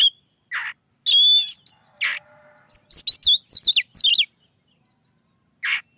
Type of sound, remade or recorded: recorded